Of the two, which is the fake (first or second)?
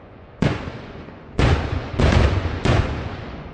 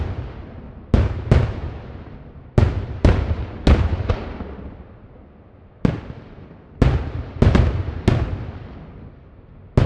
first